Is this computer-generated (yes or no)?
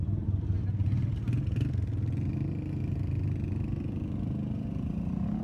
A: no